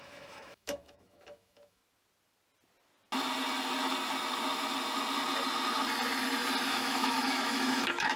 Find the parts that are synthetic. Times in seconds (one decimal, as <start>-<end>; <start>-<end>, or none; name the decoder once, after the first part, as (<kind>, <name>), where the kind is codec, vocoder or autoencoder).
0.0-1.8 (autoencoder, DAC-VAE); 6.7-8.2